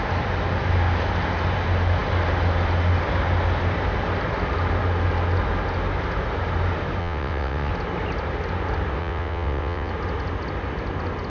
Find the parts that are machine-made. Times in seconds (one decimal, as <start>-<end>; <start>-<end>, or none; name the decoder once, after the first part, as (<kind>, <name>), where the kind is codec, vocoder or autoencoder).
7.0-7.7 (vocoder, WaveNeXt); 9.0-9.9